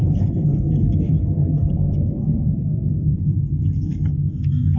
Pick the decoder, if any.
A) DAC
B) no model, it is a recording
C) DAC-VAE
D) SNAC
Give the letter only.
D